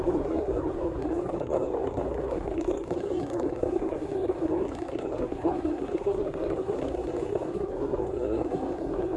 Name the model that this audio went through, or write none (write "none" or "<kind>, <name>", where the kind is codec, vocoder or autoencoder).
codec, SNAC